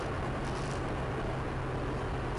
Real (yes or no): yes